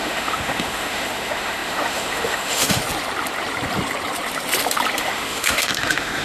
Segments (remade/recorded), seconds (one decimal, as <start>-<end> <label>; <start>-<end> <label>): 0.0-2.8 remade; 2.8-5.0 recorded; 5.0-6.2 remade